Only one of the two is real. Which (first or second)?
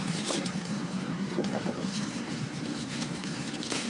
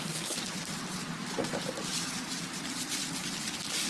second